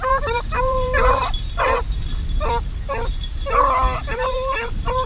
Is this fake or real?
fake